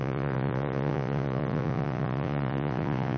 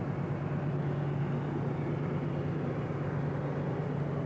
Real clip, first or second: second